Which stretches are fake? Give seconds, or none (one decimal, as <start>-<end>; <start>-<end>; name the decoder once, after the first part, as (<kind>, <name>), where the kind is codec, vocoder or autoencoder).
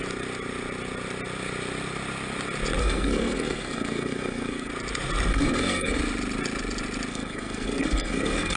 2.8-4.7 (codec, SNAC); 5.3-6.0; 7.1-8.6